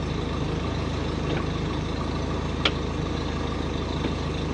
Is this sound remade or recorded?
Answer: recorded